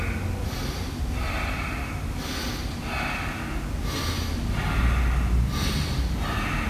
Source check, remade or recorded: recorded